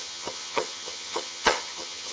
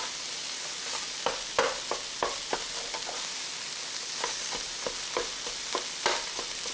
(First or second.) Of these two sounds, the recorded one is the second